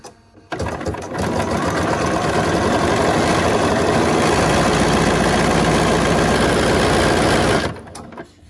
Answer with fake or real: real